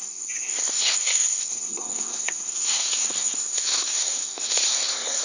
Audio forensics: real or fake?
fake